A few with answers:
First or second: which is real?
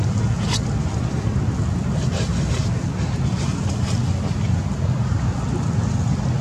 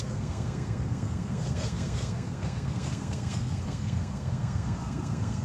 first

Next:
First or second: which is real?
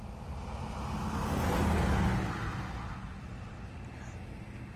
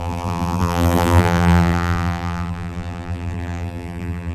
first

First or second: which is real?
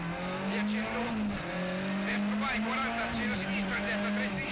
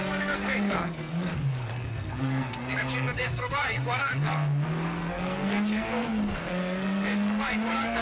first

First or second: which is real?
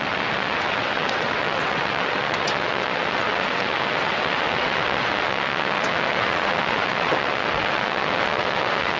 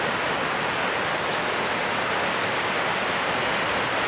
second